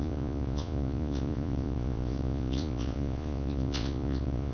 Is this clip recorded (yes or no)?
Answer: no